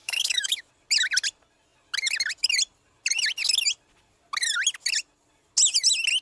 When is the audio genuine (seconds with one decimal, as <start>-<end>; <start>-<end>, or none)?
0.7-6.2